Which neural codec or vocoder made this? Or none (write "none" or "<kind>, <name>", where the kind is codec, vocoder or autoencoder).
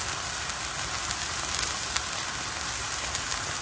none